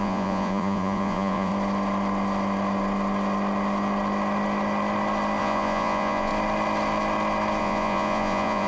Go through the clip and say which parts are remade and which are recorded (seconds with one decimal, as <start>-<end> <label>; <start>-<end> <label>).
0.0-1.5 remade; 1.5-5.4 recorded; 5.4-6.3 remade; 6.3-7.6 recorded; 7.6-8.7 remade

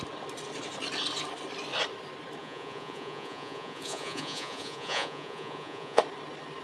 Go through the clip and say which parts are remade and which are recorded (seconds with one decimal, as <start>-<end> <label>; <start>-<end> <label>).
0.0-2.4 recorded; 2.4-6.0 remade; 6.0-6.6 recorded

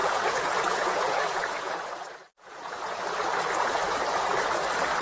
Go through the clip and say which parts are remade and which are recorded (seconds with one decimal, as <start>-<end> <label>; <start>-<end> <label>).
0.0-3.0 remade; 3.0-5.0 recorded